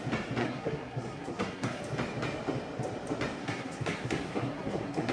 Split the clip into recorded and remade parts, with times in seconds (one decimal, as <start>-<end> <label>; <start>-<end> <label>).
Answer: 0.0-0.4 recorded; 0.4-1.8 remade; 1.8-3.4 recorded; 3.4-5.1 remade